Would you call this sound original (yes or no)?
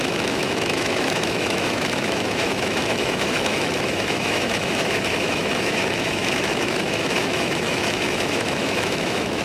no